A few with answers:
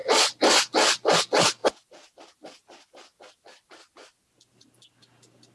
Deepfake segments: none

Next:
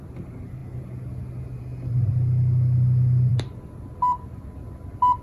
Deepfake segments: none

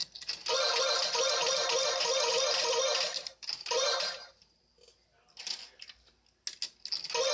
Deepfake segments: 3.1-4.6 (vocoder, BigVGAN v2)

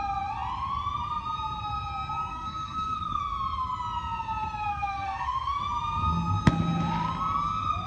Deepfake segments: 2.3-3.2 (codec, SNAC); 4.7-5.6

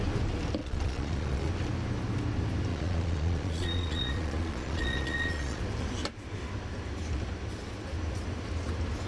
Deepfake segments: 0.6-1.5 (vocoder, Vocos); 2.7-5.6

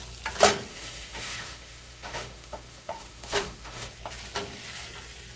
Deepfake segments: 0.7-3.9 (autoencoder, DAC-VAE)